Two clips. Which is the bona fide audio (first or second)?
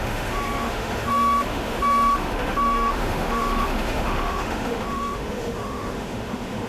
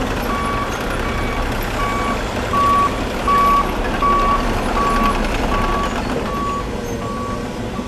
second